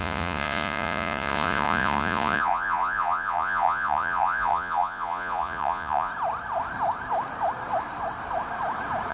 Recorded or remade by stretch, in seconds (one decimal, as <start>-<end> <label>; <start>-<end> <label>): 0.0-6.1 remade; 6.1-9.1 recorded